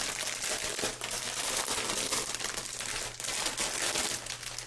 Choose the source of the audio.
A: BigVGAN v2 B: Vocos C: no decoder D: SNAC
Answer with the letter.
C